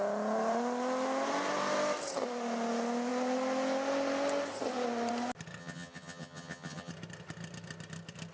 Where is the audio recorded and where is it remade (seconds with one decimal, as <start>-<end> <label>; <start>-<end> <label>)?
0.0-5.6 recorded; 5.6-6.9 remade; 6.9-8.3 recorded